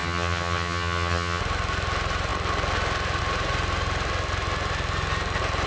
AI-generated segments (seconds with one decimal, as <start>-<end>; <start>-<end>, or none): 0.0-1.4